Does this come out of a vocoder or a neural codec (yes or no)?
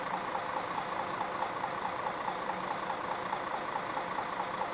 no